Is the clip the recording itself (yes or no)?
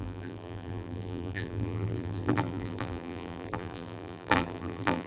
no